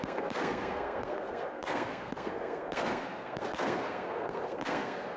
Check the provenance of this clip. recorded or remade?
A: remade